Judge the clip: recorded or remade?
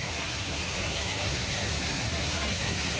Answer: remade